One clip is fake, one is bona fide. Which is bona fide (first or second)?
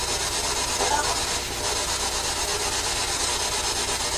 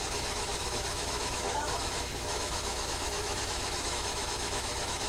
first